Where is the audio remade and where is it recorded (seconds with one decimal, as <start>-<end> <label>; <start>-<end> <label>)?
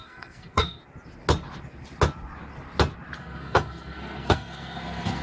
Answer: 0.0-0.8 remade; 0.8-3.2 recorded; 3.2-5.2 remade